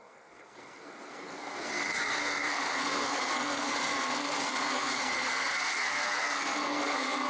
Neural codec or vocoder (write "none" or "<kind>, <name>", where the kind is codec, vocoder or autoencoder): codec, SNAC